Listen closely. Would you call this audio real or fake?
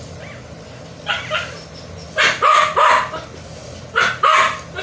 real